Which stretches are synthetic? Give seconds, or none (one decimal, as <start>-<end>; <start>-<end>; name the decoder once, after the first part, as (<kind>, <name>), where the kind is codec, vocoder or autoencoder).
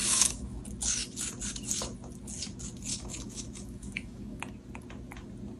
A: 0.0-0.6 (autoencoder, DAC-VAE); 2.9-4.4